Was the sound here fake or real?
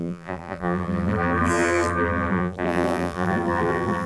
fake